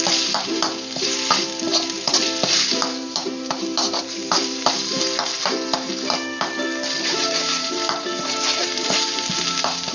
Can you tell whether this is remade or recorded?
remade